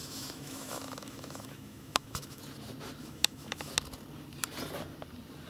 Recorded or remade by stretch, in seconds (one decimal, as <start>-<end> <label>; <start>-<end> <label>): 0.0-2.4 remade; 2.4-3.0 recorded; 3.0-3.7 remade; 3.7-5.5 recorded